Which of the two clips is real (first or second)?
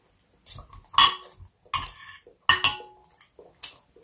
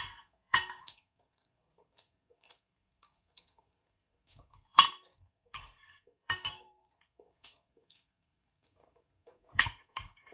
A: first